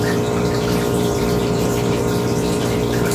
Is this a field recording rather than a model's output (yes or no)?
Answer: no